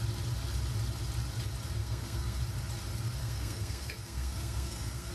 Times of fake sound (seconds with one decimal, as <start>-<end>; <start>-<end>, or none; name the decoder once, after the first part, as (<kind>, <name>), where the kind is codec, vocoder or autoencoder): 1.8-2.4 (codec, SNAC); 3.2-5.1